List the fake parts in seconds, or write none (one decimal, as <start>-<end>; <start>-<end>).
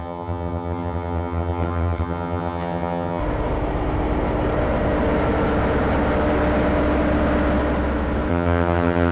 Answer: 0.0-3.2; 8.3-9.1